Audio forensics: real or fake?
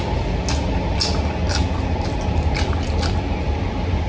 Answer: real